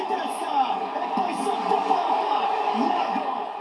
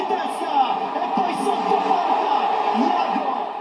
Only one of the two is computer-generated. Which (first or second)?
first